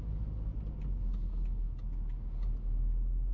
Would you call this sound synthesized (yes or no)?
no